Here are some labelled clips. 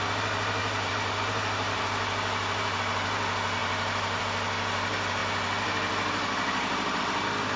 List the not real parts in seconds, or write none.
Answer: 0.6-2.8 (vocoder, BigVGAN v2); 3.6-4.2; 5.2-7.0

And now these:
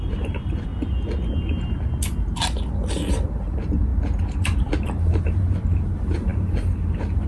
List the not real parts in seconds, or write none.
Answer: 0.0-0.7 (vocoder, BigVGAN v2); 3.1-7.3

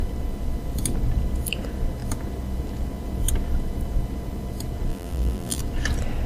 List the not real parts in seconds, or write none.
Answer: 4.9-5.6 (vocoder, BigVGAN v2)

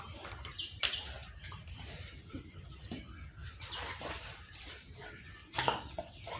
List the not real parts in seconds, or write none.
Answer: 1.2-3.0 (vocoder, BigVGAN v2); 3.4-5.3

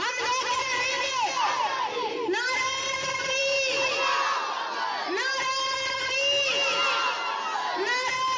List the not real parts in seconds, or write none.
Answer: none

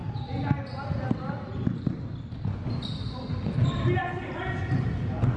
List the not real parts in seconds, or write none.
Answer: none